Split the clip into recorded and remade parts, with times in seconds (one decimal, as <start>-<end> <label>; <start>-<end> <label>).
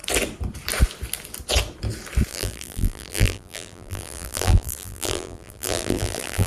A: 0.0-2.3 recorded; 2.3-6.5 remade